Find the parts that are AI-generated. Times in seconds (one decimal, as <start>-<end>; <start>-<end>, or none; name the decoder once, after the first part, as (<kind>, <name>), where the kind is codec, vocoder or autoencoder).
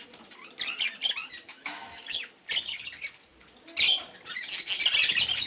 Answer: 1.5-2.3 (autoencoder, DAC-VAE)